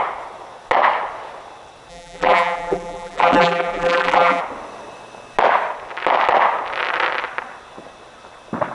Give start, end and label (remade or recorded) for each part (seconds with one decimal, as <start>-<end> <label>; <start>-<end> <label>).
0.0-1.9 recorded; 1.9-4.4 remade; 4.4-8.7 recorded